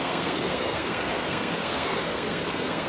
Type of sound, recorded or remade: remade